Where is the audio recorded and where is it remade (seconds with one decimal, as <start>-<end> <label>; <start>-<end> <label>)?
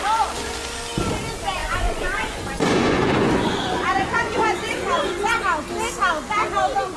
0.0-1.6 recorded; 1.6-5.4 remade; 5.4-7.0 recorded